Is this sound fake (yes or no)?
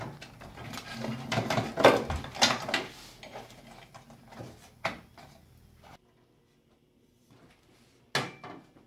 no